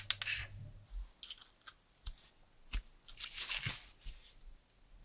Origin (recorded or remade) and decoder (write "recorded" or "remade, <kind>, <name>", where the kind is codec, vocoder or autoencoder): recorded